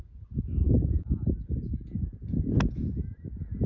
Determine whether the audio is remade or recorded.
recorded